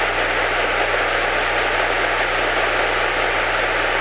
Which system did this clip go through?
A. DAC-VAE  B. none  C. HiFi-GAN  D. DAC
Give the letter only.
B